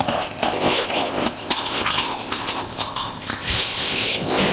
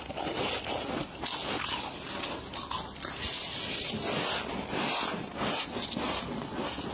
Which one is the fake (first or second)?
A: first